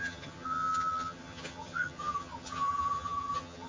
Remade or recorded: remade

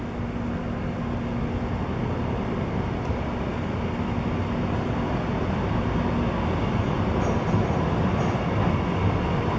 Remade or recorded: recorded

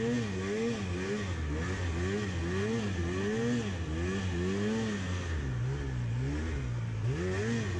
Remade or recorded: recorded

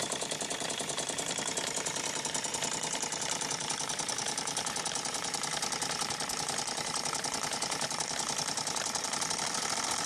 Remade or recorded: remade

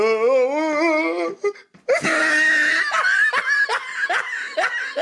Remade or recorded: recorded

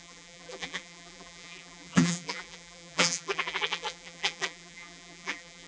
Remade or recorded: remade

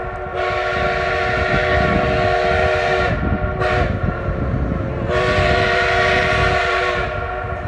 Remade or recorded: recorded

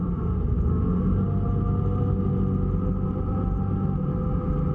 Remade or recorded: recorded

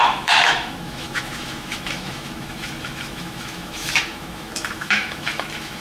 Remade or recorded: remade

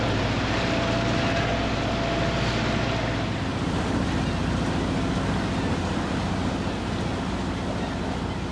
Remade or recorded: recorded